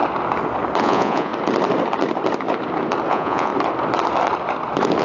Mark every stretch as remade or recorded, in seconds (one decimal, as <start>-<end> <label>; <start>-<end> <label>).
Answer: 0.0-0.8 recorded; 0.8-1.3 remade; 1.3-3.1 recorded; 3.1-3.5 remade; 3.5-5.0 recorded